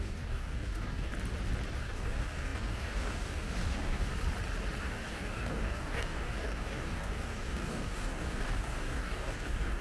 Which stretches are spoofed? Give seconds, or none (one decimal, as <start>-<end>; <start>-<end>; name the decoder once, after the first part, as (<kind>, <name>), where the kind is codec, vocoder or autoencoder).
0.0-1.1 (codec, DAC); 1.8-4.1; 4.8-9.8